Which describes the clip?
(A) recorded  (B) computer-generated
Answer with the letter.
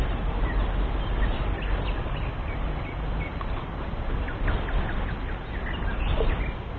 A